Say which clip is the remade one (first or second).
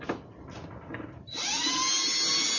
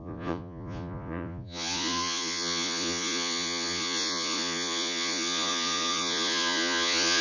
second